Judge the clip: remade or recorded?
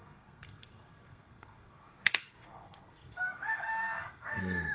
remade